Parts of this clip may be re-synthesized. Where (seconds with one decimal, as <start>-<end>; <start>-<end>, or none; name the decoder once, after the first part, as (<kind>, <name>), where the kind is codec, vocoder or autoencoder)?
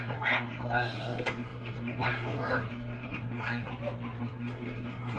0.0-3.7 (codec, SNAC); 4.2-5.2